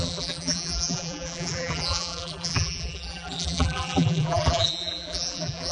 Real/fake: fake